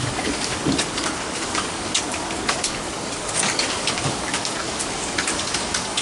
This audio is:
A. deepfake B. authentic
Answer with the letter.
A